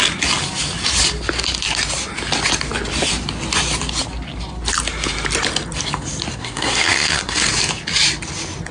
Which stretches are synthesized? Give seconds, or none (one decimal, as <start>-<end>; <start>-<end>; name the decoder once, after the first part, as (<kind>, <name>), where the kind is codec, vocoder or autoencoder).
6.3-7.4 (codec, SNAC)

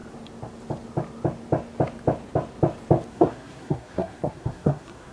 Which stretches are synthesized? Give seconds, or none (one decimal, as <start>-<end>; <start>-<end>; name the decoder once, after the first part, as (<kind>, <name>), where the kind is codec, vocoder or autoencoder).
3.1-5.1 (codec, SNAC)